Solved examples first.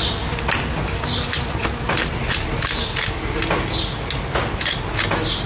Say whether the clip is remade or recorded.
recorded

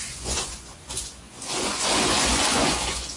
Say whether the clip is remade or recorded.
remade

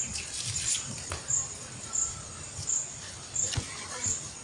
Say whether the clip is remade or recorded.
recorded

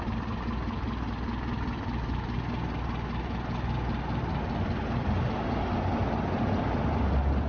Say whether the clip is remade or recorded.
recorded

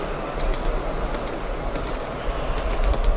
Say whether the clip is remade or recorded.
recorded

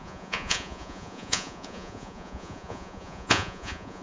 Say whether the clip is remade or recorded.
remade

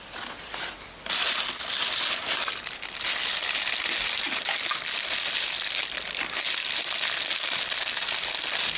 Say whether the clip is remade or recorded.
recorded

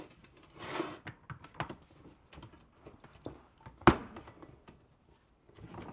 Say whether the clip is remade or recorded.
recorded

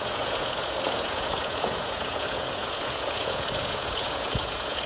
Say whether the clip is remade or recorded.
remade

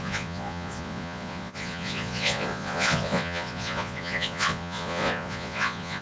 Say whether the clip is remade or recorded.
remade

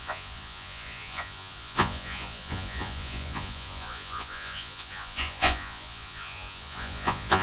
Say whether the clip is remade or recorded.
remade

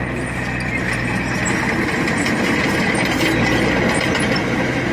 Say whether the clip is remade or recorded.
recorded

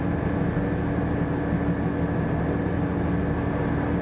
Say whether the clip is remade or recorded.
recorded